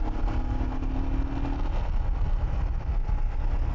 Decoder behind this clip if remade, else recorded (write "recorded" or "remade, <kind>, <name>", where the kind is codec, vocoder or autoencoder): recorded